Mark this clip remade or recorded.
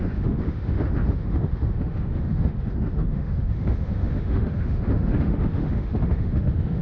remade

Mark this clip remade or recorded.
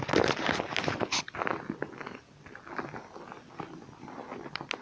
recorded